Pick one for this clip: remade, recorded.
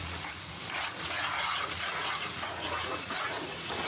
remade